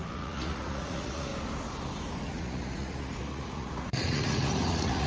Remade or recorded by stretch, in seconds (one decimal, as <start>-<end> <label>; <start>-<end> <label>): 0.0-1.3 remade; 1.3-2.3 recorded; 2.3-5.1 remade